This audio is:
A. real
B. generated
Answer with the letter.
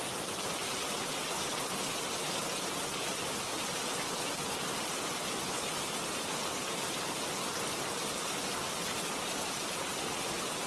A